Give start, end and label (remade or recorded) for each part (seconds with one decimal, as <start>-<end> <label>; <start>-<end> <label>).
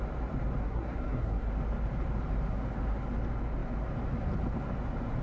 0.0-0.6 recorded; 0.6-1.5 remade; 1.5-5.2 recorded